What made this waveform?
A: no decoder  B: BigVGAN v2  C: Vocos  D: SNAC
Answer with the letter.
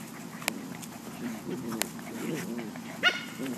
A